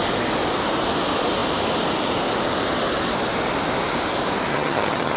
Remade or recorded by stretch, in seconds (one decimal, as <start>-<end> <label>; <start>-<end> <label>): 0.0-4.5 recorded; 4.5-5.2 remade